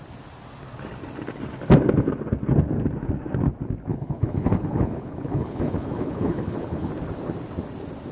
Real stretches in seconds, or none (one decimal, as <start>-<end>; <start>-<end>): 0.0-3.9; 6.9-8.1